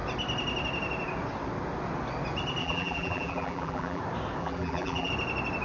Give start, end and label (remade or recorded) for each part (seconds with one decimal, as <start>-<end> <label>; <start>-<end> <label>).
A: 0.0-2.6 recorded; 2.6-4.0 remade; 4.0-4.4 recorded; 4.4-5.1 remade; 5.1-5.6 recorded